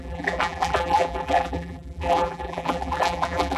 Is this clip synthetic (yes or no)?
yes